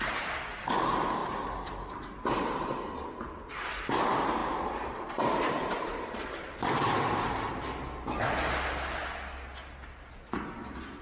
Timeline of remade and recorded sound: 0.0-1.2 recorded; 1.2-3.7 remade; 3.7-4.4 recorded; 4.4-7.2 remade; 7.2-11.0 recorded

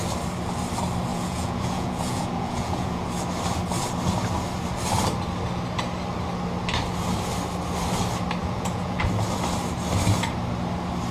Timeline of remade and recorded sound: 0.0-1.1 recorded; 1.1-3.1 remade; 3.1-8.4 recorded; 8.4-9.0 remade; 9.0-11.1 recorded

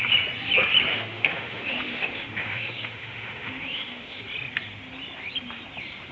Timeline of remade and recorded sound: 0.0-0.9 recorded; 0.9-4.2 remade; 4.2-6.1 recorded

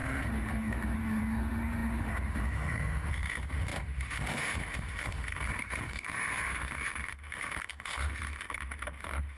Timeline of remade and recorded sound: 0.0-9.4 remade

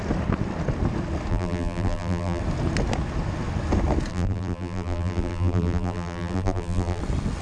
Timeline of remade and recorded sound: 0.0-1.3 recorded; 1.3-2.4 remade; 2.4-4.1 recorded; 4.1-7.0 remade; 7.0-7.4 recorded

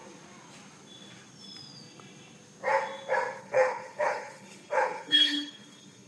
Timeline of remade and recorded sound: 0.0-3.4 recorded; 3.4-6.1 remade

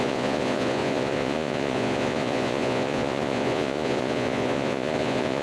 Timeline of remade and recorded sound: 0.0-5.4 remade

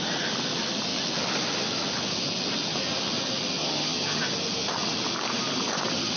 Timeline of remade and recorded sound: 0.0-3.6 recorded; 3.6-4.2 remade; 4.2-6.2 recorded